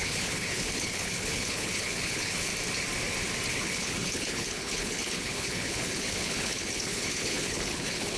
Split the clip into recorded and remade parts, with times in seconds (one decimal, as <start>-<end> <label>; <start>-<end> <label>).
0.0-2.5 remade; 2.5-3.5 recorded; 3.5-8.2 remade